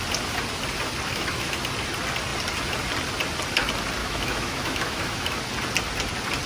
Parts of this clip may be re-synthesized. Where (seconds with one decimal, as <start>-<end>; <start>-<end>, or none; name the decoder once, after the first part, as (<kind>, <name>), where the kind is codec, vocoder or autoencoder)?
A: 1.1-1.6 (autoencoder, DAC-VAE); 4.0-5.4